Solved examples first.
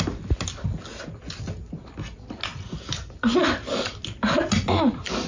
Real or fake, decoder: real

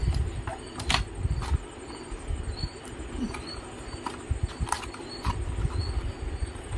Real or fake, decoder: real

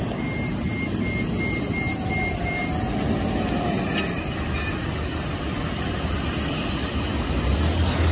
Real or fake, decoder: real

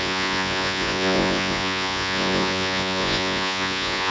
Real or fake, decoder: fake, vocoder, Vocos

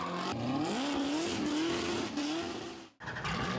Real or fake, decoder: real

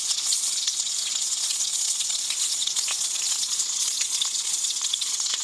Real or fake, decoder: fake, vocoder, Vocos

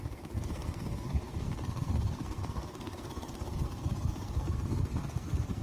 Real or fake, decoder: fake, codec, SNAC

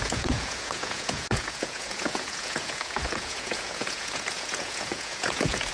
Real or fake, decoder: fake, vocoder, Vocos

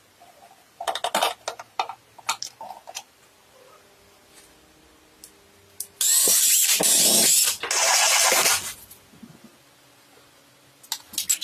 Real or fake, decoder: real